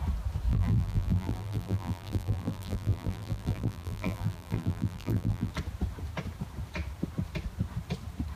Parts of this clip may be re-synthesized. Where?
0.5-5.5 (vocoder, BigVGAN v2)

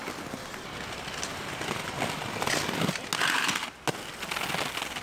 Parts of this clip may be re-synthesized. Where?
none

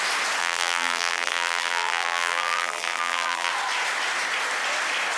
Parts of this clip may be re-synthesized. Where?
0.4-3.5 (vocoder, BigVGAN v2)